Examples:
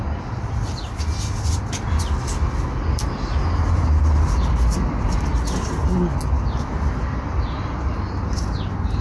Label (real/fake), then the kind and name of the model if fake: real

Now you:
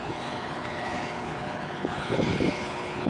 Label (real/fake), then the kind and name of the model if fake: fake, codec, HILCodec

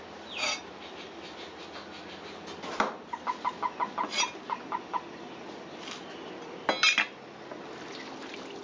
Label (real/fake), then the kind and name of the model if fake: real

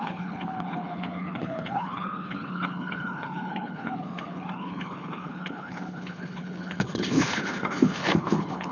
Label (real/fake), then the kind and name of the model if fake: fake, codec, HILCodec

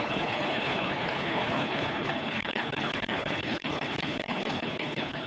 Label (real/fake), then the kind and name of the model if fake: fake, codec, HILCodec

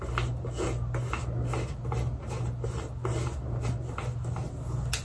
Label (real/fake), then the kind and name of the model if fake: real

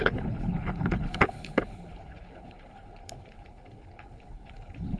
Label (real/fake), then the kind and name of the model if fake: fake, codec, HILCodec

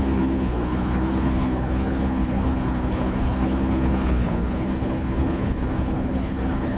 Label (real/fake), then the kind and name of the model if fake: fake, codec, HILCodec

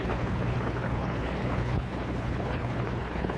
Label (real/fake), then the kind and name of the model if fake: fake, codec, HILCodec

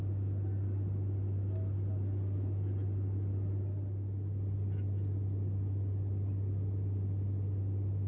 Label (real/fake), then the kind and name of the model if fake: real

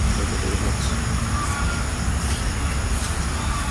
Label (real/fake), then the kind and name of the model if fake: real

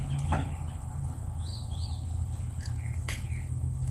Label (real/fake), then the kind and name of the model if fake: fake, codec, HILCodec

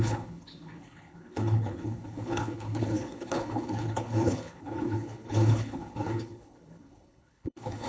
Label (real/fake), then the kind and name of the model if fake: fake, codec, HILCodec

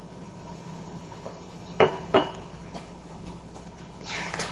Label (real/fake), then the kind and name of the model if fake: fake, codec, HILCodec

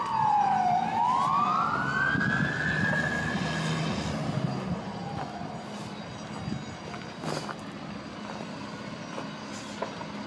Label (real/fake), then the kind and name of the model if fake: real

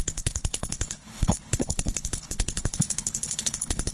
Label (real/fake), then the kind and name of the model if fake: fake, codec, HILCodec